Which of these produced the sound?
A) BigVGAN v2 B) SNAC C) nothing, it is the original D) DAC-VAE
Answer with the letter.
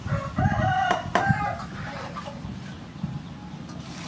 C